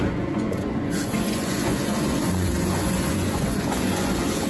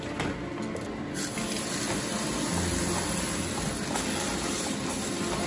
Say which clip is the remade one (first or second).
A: first